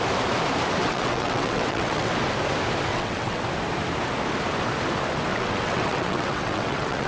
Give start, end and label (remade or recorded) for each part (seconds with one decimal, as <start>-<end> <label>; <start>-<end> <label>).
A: 0.0-0.8 recorded; 0.8-2.1 remade; 2.1-2.9 recorded; 2.9-3.4 remade; 3.4-5.3 recorded; 5.3-7.1 remade